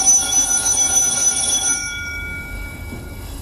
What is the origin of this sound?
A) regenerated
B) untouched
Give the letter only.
A